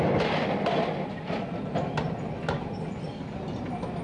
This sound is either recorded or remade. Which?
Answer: recorded